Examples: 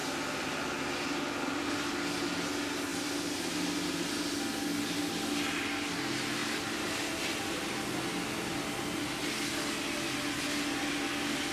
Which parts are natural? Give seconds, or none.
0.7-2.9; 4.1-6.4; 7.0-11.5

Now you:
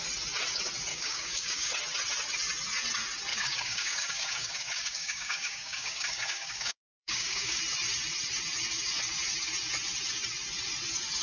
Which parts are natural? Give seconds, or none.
0.0-0.9; 1.7-3.3; 7.6-11.2

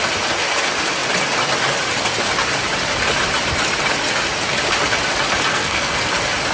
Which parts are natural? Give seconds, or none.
0.0-5.5; 6.1-6.5

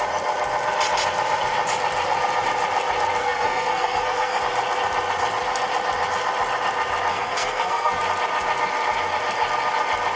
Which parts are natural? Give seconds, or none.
0.0-3.2; 4.4-7.1; 8.0-10.2